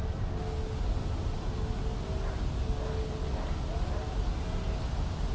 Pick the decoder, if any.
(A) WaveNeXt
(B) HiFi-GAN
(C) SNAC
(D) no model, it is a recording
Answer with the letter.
D